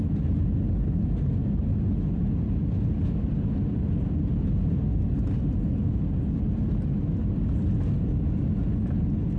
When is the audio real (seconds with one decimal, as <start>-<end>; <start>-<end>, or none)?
0.0-9.4